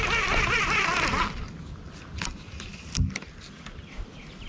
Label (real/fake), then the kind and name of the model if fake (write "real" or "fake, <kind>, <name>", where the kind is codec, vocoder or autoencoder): real